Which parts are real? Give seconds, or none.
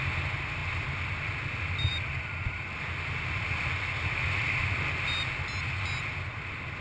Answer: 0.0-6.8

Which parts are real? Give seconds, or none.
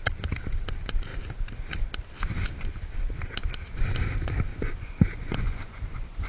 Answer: 0.0-4.5